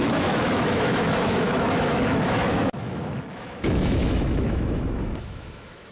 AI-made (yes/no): yes